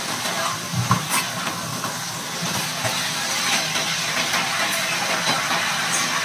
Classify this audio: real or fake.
real